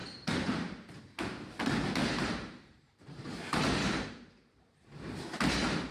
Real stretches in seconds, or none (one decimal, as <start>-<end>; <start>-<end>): 1.0-2.0; 5.1-5.9